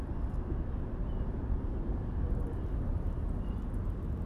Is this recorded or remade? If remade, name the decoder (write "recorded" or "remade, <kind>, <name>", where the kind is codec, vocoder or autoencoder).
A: recorded